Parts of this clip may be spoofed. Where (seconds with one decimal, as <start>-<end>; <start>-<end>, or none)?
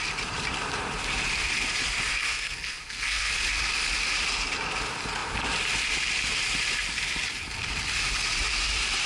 2.1-3.3